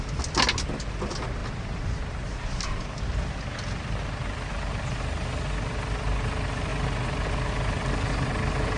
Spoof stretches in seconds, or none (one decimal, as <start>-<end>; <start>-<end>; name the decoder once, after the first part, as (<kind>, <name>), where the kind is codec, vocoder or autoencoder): none